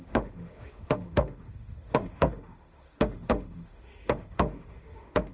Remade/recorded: remade